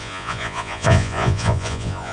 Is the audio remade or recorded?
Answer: remade